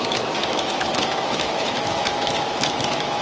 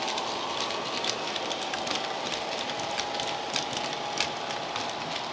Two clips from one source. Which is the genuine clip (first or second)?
second